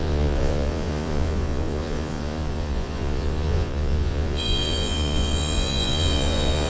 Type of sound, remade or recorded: remade